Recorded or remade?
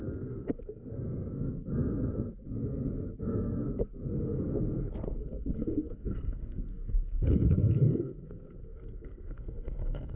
remade